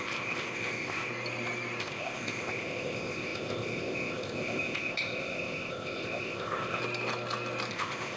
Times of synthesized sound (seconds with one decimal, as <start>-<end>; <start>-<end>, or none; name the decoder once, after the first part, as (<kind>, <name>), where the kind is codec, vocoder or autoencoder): 0.0-1.1 (codec, ZipCodec); 1.8-6.8; 7.7-8.2